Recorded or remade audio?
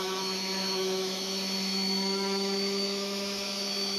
remade